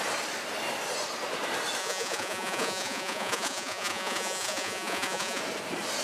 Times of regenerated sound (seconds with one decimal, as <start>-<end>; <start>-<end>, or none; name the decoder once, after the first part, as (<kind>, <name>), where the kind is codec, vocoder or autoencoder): 1.8-5.4 (vocoder, Vocos)